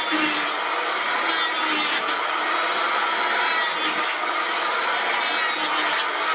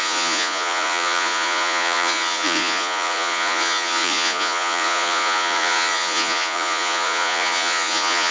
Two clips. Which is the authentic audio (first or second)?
first